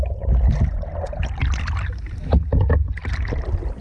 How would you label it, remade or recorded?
recorded